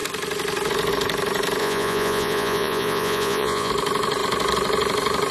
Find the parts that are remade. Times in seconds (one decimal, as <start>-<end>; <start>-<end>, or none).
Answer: 1.6-3.7